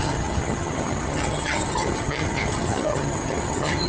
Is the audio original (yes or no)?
no